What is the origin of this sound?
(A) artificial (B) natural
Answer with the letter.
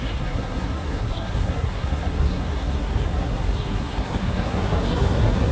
A